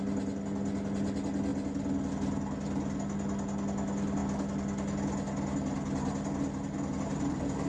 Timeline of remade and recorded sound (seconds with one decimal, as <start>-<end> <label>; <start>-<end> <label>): 0.0-7.7 recorded